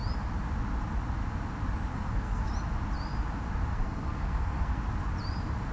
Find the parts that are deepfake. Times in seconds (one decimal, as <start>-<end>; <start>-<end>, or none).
1.9-2.5; 3.7-4.8